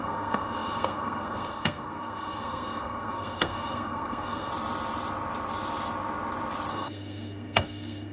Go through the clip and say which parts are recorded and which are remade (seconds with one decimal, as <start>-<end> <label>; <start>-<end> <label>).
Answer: 0.0-4.5 remade; 4.5-6.7 recorded; 6.7-8.1 remade